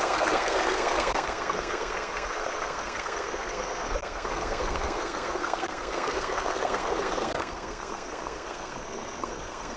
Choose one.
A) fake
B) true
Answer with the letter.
A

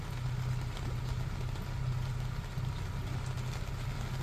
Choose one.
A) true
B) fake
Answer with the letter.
A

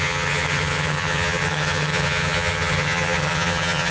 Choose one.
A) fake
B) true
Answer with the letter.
A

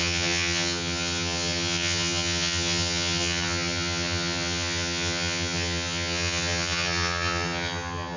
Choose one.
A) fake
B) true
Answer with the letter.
A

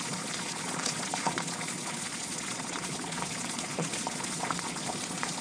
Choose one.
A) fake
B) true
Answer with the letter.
A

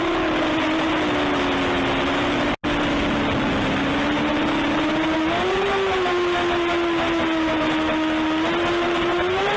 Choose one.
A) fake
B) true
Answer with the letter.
B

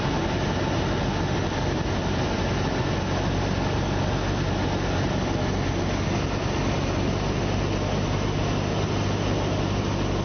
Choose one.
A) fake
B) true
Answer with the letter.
B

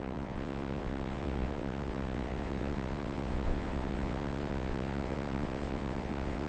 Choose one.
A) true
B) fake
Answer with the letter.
B